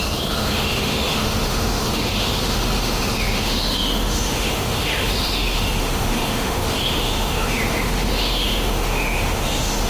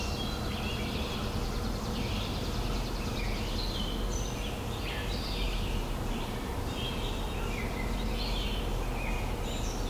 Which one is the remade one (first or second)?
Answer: first